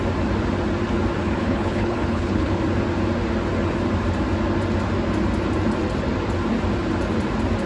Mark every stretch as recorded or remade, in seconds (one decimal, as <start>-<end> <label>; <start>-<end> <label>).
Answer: 0.0-1.2 recorded; 1.2-2.6 remade; 2.6-7.7 recorded